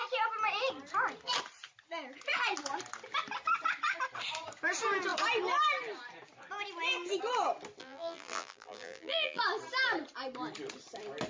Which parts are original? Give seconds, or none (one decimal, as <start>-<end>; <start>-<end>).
0.0-7.8; 9.4-11.3